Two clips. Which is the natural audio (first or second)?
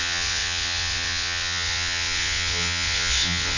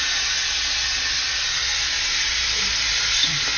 second